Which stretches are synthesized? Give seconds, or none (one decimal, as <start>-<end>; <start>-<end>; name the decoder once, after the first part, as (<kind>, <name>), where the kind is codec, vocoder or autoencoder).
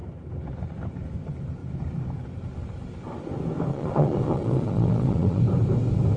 3.7-5.4 (vocoder, Vocos)